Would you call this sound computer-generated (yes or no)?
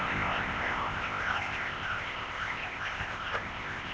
yes